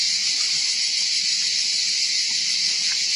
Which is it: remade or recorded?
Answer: recorded